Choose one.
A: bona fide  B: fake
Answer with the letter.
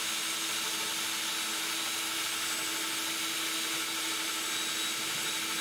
A